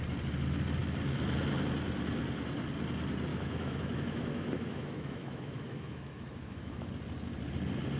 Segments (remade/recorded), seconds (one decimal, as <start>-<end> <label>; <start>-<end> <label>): 0.0-3.3 recorded; 3.3-6.9 remade; 6.9-8.0 recorded

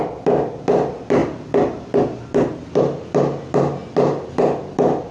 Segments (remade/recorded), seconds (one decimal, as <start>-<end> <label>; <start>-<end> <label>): 0.0-5.1 recorded